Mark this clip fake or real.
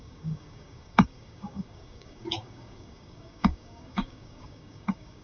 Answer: fake